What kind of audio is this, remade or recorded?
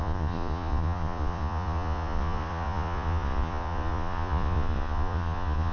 remade